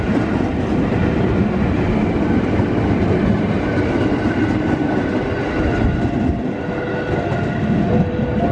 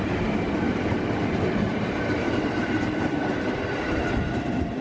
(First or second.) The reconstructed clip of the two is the second